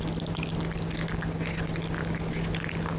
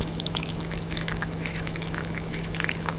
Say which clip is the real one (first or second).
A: first